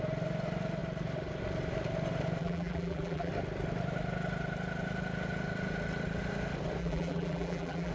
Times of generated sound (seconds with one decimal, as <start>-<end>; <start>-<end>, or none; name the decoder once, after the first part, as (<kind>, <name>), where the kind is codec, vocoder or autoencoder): 2.4-3.3 (vocoder, BigVGAN v2); 6.8-7.9